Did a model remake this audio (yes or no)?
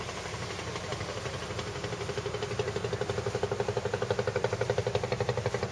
no